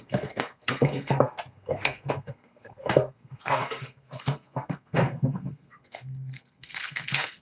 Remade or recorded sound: remade